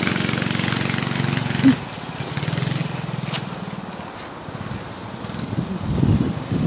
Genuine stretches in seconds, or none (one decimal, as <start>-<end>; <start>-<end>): 0.0-6.7